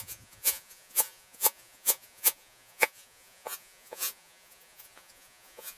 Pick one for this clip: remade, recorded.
remade